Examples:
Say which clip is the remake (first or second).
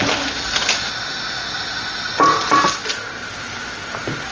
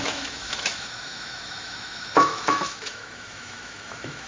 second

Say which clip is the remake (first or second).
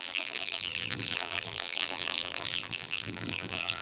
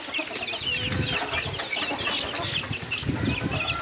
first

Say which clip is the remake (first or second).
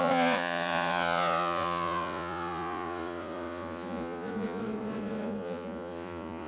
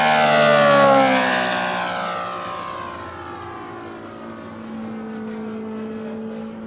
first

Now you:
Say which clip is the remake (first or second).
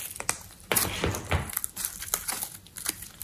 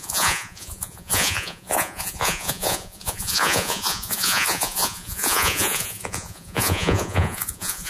second